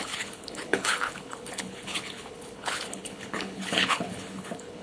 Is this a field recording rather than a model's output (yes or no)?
no